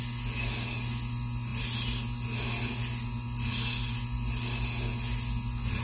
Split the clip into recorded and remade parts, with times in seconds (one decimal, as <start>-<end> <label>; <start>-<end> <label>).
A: 0.0-5.8 recorded